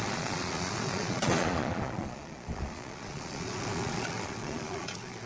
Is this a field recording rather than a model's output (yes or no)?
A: no